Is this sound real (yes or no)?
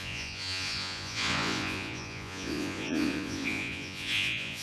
no